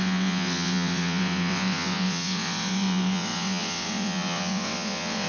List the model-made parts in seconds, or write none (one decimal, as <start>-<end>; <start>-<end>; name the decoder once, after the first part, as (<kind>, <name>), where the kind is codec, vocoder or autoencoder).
0.0-5.3 (vocoder, WaveNeXt)